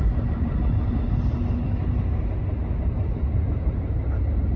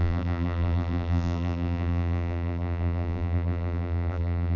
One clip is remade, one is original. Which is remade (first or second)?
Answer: second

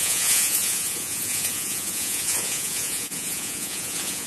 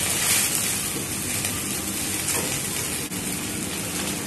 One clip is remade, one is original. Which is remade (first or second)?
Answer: first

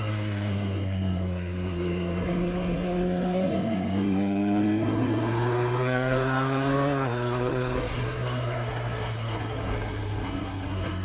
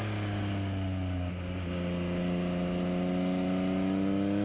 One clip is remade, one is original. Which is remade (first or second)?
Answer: first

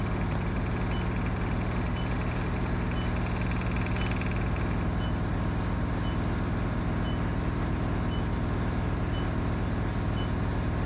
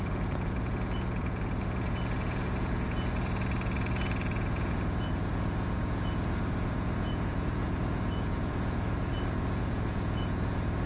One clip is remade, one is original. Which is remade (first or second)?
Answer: second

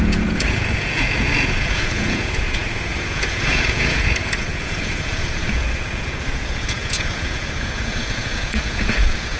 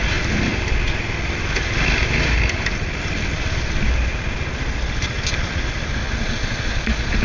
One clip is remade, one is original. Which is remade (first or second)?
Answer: first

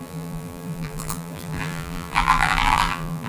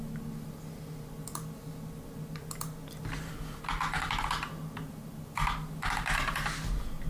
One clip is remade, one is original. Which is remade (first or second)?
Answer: first